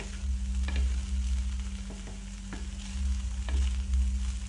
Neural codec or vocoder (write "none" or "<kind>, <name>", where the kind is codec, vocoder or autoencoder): none